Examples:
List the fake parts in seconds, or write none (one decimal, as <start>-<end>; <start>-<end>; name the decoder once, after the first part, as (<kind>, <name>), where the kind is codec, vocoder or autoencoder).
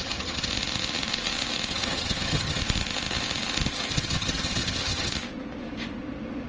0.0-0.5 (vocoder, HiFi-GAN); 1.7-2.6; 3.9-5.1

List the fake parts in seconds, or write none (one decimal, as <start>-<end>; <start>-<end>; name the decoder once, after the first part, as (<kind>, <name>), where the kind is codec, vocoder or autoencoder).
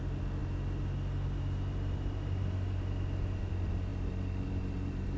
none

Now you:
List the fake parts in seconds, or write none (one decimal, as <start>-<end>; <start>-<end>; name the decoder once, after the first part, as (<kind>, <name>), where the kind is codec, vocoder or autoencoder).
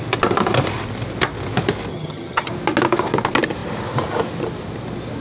1.9-2.5 (vocoder, HiFi-GAN)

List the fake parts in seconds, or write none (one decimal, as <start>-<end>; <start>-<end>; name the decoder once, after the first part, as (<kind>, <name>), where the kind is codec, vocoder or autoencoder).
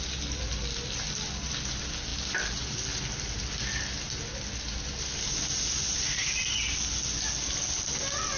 none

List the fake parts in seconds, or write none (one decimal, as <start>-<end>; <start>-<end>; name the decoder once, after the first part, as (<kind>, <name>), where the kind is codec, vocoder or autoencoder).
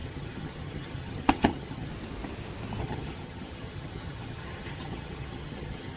0.0-1.9 (vocoder, HiFi-GAN); 2.8-6.0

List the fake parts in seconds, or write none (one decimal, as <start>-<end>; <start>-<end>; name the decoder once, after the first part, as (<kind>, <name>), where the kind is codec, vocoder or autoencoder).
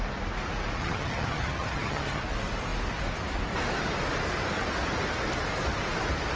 0.8-2.2 (vocoder, HiFi-GAN)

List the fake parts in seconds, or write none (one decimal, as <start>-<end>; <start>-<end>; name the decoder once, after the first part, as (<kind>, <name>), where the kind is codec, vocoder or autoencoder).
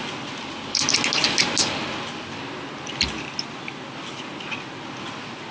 none